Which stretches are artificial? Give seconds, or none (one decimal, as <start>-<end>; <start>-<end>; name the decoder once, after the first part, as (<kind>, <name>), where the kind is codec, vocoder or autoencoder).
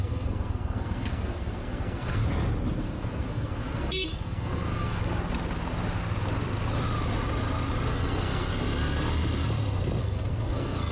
0.0-2.2 (codec, SNAC); 2.8-5.0; 7.9-8.5; 10.0-10.9